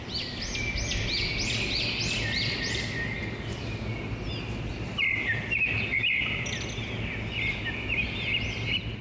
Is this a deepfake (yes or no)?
no